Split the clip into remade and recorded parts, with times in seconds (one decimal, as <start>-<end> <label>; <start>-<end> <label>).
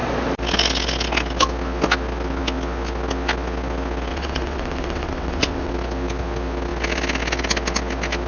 0.0-4.1 recorded; 4.1-5.7 remade; 5.7-8.3 recorded